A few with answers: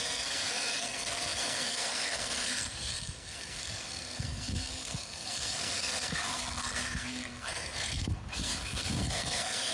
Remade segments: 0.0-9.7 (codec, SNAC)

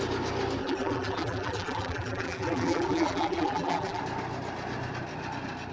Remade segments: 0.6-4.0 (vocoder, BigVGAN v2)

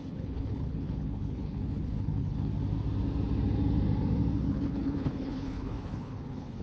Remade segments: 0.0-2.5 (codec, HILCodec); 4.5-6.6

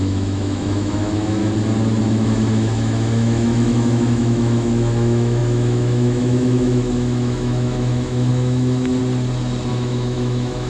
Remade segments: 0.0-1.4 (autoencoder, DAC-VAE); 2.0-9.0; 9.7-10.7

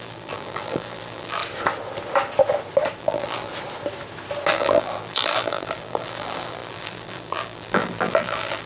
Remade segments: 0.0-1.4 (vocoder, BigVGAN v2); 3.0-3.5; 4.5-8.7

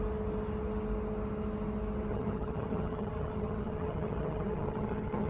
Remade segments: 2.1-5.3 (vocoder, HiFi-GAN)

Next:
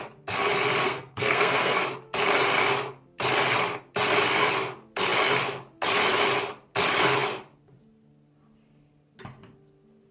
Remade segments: 0.8-1.8 (codec, SNAC)